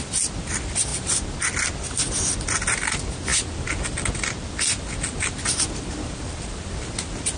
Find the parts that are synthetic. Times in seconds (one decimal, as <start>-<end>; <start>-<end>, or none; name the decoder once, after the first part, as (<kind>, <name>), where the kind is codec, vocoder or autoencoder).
none